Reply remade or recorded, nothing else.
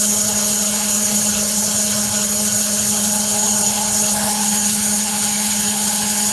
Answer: remade